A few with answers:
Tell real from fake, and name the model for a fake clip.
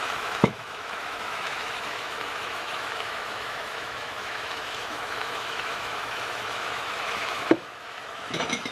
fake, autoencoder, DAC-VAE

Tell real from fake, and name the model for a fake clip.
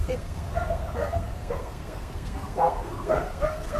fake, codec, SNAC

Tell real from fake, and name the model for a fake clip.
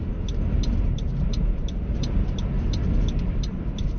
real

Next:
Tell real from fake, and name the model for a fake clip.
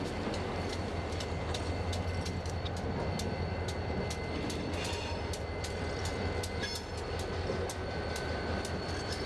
real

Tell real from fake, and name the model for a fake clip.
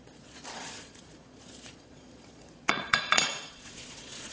fake, vocoder, Vocos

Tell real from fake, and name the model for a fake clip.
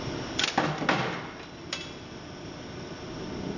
real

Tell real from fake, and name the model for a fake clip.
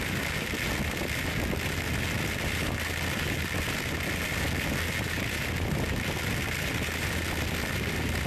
real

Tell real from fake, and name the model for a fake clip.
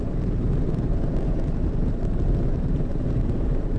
fake, vocoder, BigVGAN v2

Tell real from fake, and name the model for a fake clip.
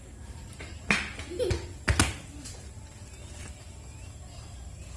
real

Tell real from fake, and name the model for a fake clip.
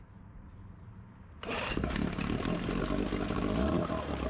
fake, vocoder, BigVGAN v2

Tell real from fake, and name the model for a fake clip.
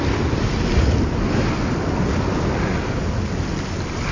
real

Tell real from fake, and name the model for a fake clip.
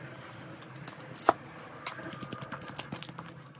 real